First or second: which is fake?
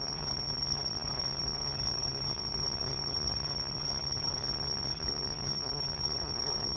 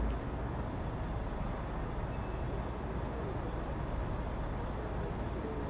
first